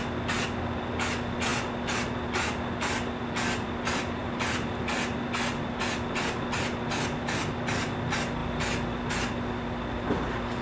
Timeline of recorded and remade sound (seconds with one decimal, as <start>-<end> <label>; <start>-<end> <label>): 0.0-4.2 recorded; 4.2-4.9 remade; 4.9-8.4 recorded; 8.4-9.1 remade; 9.1-10.6 recorded